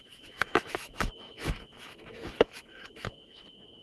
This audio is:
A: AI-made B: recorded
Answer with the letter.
A